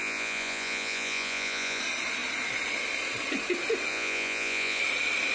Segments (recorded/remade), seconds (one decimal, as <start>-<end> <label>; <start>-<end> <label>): 0.0-1.8 remade; 1.8-3.9 recorded; 3.9-4.8 remade; 4.8-5.3 recorded